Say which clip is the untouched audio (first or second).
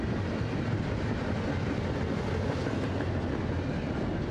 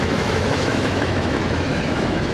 first